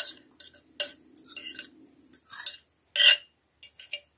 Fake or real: real